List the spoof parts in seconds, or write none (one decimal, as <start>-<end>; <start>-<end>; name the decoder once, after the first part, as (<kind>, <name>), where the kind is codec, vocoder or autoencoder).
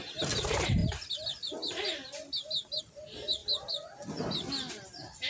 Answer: none